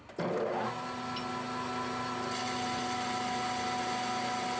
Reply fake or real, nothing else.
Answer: real